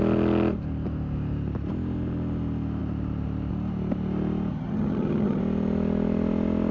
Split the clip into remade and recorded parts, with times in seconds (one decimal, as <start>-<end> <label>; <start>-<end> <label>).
0.0-4.5 recorded; 4.5-5.4 remade; 5.4-6.7 recorded